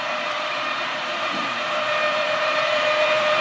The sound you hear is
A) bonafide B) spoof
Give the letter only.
B